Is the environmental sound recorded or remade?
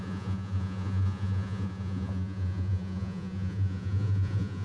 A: remade